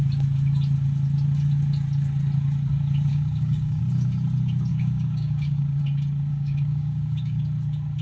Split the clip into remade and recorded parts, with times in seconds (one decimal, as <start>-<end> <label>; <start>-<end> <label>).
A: 0.0-3.1 recorded; 3.1-3.8 remade; 3.8-4.7 recorded; 4.7-5.8 remade; 5.8-6.3 recorded; 6.3-7.4 remade; 7.4-8.0 recorded

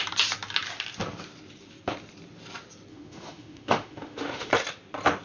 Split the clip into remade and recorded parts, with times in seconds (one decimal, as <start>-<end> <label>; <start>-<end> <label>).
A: 0.0-2.9 recorded; 2.9-4.5 remade; 4.5-5.2 recorded